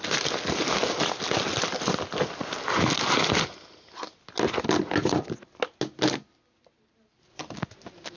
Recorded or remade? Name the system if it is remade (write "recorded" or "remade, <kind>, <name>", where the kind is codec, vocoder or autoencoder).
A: recorded